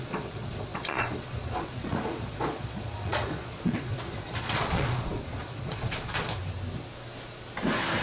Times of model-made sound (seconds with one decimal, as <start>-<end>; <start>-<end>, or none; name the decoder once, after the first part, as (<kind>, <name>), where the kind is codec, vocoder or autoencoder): 0.0-6.4 (vocoder, Vocos)